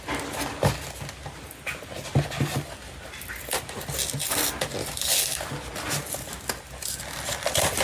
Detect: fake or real real